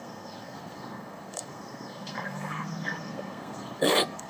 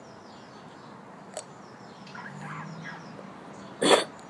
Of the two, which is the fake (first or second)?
first